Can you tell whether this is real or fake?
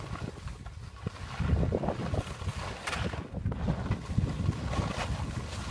real